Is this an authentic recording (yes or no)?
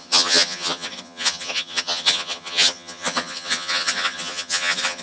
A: no